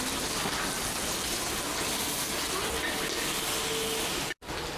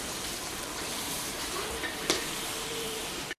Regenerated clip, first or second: second